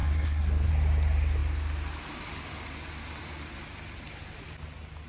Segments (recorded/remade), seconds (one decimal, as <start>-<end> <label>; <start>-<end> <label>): 0.0-0.7 remade; 0.7-5.1 recorded